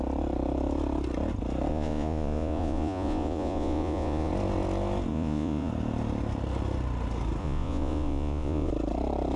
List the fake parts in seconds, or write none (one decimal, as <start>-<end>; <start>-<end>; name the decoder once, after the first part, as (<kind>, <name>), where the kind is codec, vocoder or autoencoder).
1.7-4.3 (vocoder, Vocos); 5.1-5.7; 7.4-8.7